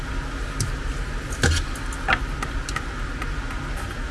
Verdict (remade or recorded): recorded